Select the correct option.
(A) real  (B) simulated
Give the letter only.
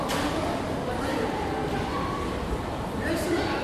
B